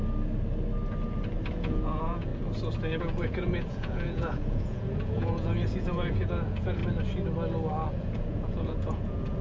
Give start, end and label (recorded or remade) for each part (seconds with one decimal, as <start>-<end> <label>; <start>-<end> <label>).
0.0-1.5 recorded; 1.5-2.3 remade; 2.3-3.0 recorded; 3.0-6.8 remade; 6.8-7.9 recorded; 7.9-9.4 remade